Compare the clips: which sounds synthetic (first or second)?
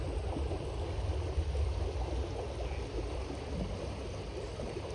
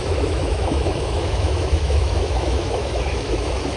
second